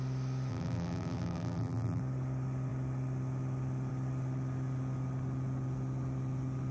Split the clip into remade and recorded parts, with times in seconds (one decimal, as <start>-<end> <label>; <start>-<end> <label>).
0.0-0.5 recorded; 0.5-2.0 remade; 2.0-6.7 recorded

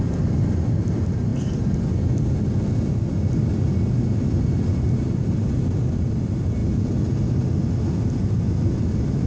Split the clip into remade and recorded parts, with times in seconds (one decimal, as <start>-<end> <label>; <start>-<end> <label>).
0.0-9.3 recorded

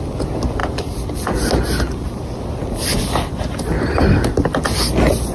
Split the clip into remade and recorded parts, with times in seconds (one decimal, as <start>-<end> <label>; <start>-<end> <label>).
0.0-5.3 recorded